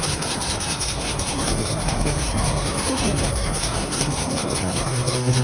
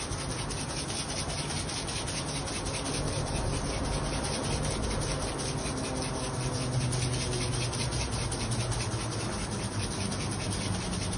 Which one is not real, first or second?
first